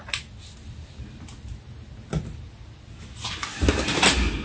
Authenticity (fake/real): real